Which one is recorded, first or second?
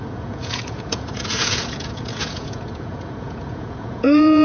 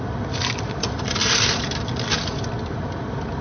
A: second